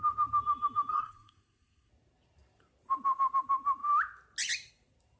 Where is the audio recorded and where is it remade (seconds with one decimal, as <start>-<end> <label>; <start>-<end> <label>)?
0.0-0.9 recorded; 0.9-1.9 remade; 1.9-5.2 recorded